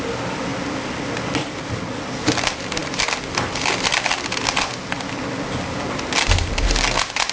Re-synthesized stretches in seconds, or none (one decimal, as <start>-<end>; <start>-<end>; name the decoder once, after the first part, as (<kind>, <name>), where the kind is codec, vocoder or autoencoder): none